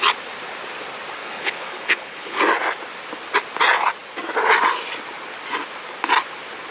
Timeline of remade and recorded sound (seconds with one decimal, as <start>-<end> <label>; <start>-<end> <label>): 0.0-1.2 recorded; 1.2-2.4 remade; 2.4-6.7 recorded